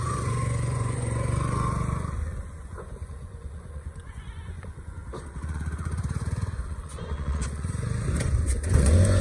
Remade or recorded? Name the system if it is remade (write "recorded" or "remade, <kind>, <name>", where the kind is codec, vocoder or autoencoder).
remade, vocoder, Vocos